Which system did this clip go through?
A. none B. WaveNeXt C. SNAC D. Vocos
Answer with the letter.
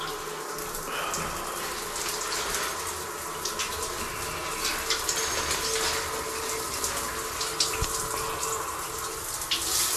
A